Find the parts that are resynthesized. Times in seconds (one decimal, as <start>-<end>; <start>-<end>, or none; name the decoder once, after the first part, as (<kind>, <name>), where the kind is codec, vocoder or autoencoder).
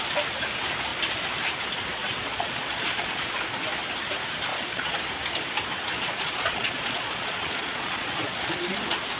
2.0-3.4 (vocoder, Vocos); 4.5-5.0; 6.0-8.5